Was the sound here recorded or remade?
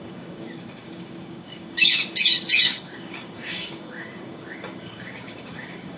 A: remade